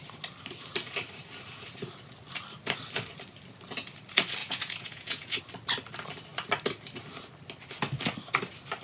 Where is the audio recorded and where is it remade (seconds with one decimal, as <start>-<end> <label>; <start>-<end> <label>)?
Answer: 0.0-4.4 recorded; 4.4-5.4 remade; 5.4-8.8 recorded